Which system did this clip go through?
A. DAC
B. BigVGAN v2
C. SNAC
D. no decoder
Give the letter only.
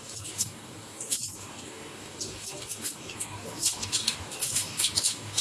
A